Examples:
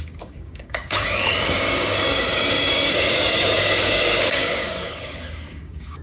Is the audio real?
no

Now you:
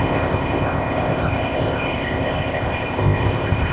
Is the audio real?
no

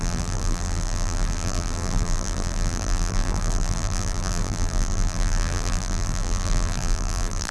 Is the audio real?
no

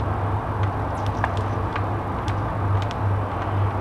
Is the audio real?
yes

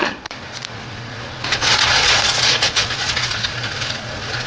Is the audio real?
no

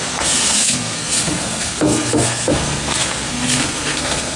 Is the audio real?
no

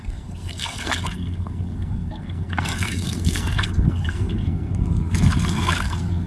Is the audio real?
no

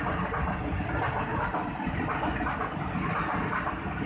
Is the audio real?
yes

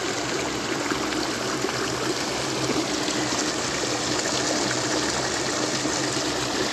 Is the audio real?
yes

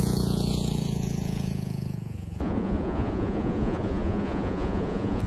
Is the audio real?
no